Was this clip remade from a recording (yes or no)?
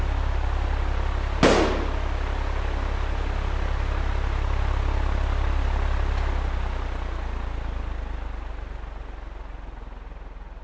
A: no